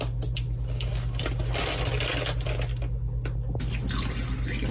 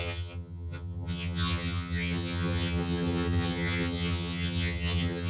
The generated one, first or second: second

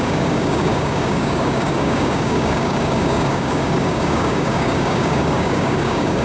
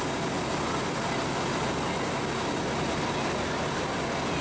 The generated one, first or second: first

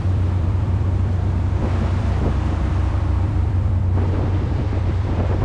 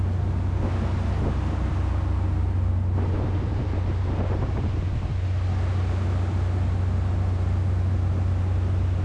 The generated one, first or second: first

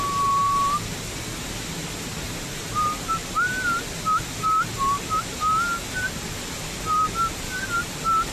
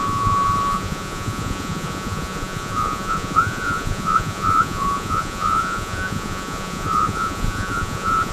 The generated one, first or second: second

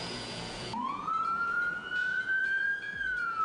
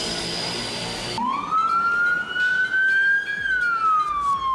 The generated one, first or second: first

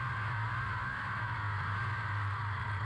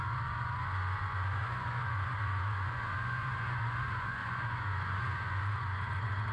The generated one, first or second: second